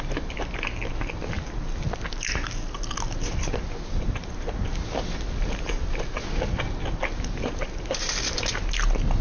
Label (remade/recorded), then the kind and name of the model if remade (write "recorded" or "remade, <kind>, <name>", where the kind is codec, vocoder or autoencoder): recorded